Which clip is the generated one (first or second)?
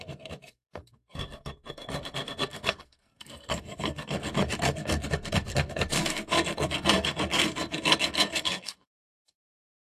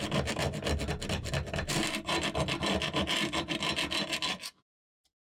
first